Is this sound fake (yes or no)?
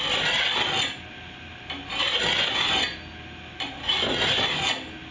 no